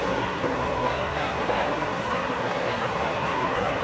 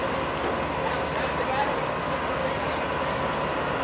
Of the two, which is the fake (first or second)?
first